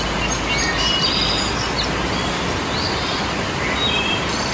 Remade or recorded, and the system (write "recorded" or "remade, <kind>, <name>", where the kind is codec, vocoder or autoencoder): recorded